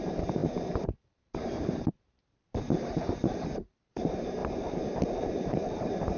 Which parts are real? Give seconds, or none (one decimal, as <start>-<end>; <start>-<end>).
4.4-5.0